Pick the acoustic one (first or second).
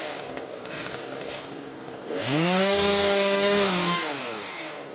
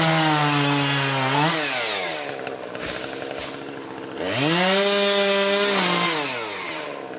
second